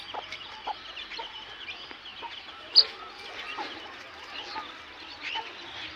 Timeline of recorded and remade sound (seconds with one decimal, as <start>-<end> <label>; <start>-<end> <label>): 0.0-6.0 recorded